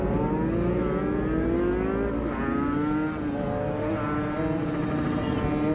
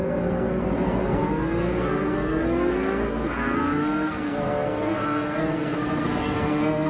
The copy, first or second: second